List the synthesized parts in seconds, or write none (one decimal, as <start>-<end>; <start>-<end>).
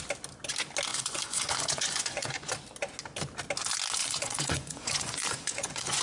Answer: 0.9-2.5; 4.0-6.0